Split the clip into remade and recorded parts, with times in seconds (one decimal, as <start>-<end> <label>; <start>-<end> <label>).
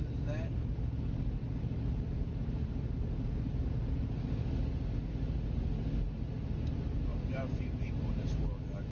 0.0-7.1 recorded; 7.1-8.4 remade; 8.4-8.9 recorded